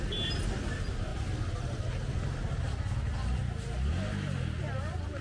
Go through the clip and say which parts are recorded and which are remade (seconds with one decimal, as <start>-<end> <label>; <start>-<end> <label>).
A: 0.0-5.2 recorded